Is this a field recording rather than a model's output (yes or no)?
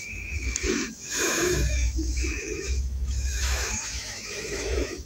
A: no